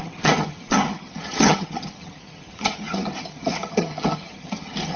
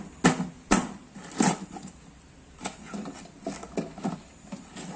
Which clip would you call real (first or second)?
second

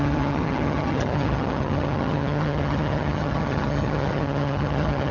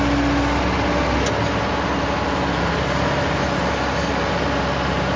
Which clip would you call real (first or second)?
second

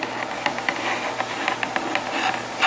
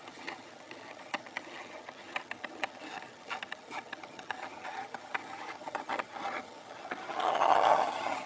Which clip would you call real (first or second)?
first